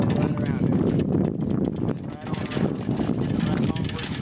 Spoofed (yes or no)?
no